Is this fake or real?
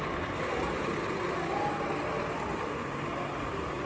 real